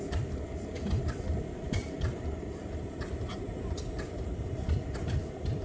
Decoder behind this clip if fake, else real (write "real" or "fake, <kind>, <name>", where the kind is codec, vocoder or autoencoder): fake, vocoder, BigVGAN v2